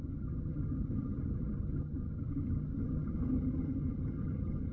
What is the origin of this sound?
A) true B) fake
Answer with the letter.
B